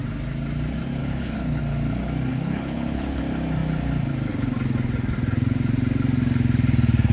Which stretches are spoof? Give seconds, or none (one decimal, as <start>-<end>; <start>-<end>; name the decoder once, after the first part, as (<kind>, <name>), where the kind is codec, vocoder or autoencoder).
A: 1.0-1.6 (codec, HILCodec); 2.3-3.2